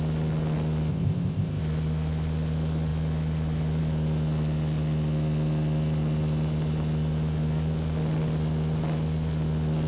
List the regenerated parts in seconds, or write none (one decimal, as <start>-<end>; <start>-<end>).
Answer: 0.9-1.6